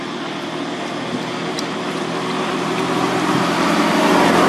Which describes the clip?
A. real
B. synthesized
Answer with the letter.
A